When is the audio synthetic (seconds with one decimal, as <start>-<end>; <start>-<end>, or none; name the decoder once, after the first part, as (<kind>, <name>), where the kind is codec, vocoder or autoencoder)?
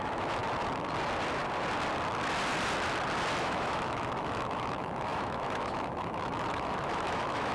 0.0-0.4 (autoencoder, DAC-VAE); 3.4-7.5